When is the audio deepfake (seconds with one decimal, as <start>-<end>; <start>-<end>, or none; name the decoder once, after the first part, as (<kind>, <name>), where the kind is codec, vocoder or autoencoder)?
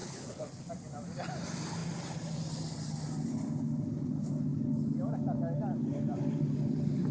0.0-0.7 (codec, HILCodec)